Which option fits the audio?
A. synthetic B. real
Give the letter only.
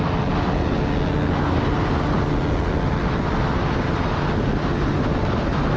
B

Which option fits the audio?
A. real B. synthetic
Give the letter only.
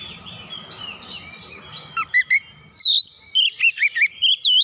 B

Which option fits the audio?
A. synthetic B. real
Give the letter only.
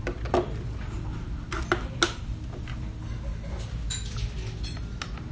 B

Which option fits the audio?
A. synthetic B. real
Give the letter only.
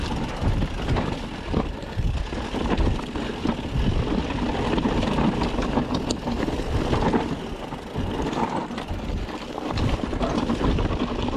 B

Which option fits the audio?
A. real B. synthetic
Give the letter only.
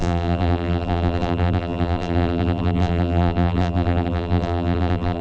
B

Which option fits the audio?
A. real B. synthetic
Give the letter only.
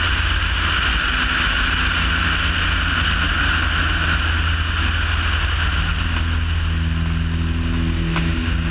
A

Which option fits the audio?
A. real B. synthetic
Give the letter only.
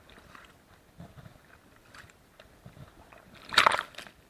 B